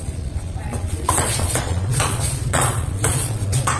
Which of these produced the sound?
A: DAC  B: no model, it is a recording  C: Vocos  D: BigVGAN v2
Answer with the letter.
C